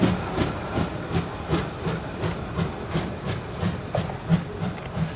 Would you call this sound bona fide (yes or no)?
yes